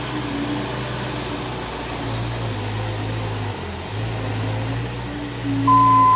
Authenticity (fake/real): real